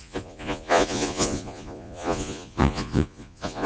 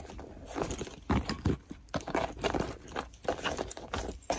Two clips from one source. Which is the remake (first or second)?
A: first